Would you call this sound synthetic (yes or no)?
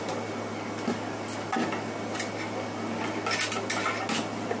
no